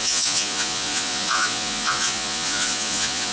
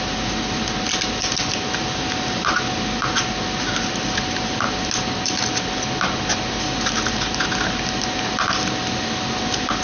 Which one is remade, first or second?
first